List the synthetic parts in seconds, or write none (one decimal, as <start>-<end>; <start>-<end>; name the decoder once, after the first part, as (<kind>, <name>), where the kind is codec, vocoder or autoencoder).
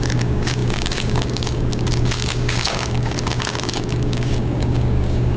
0.0-5.4 (codec, DAC)